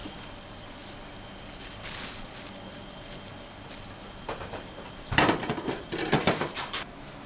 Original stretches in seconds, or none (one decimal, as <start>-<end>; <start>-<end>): 0.0-4.4